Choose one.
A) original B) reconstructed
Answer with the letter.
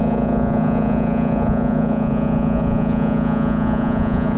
B